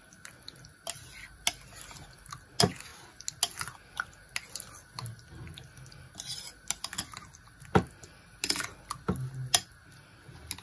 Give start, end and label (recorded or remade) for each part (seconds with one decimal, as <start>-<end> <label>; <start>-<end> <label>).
0.0-10.6 recorded